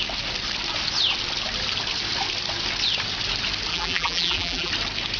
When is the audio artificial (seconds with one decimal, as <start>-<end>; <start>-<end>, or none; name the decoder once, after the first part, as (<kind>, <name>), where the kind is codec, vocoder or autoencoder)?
3.7-4.7 (vocoder, BigVGAN v2)